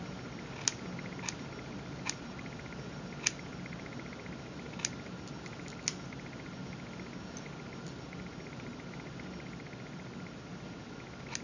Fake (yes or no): no